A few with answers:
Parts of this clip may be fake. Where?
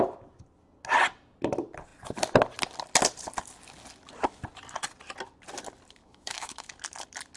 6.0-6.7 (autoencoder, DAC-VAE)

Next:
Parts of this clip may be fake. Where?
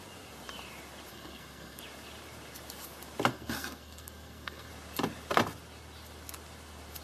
1.1-1.8 (codec, SNAC); 3.3-4.7